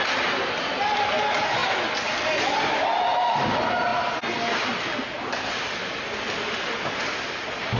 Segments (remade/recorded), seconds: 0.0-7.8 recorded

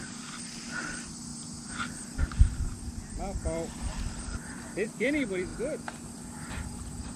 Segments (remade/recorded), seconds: 0.0-5.5 remade; 5.5-6.5 recorded; 6.5-7.2 remade

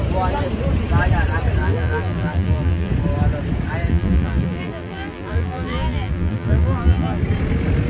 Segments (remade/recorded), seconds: 0.0-1.6 recorded; 1.6-2.9 remade; 2.9-3.9 recorded; 3.9-7.2 remade; 7.2-7.9 recorded